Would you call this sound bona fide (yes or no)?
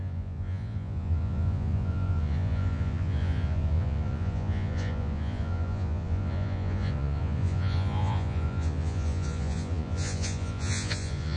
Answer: no